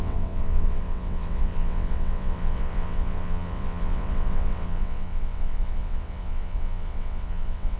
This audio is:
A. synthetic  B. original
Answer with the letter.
A